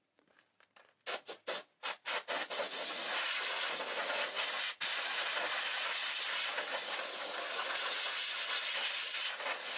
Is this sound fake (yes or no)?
no